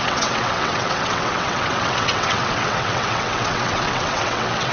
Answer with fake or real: fake